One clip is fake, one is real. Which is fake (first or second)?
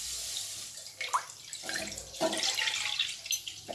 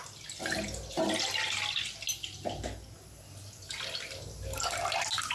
first